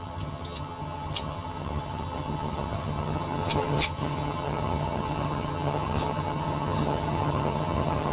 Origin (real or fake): fake